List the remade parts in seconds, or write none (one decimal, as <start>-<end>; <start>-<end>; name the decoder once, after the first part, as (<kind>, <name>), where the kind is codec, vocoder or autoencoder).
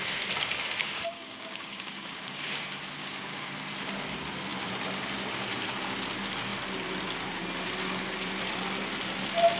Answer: 0.8-2.5 (codec, DAC); 3.0-3.5